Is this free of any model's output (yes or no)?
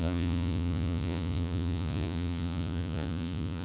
no